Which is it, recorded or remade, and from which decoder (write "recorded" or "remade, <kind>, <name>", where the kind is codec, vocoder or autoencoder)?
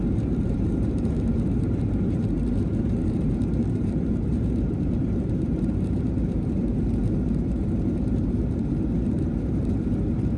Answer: remade, vocoder, BigVGAN v2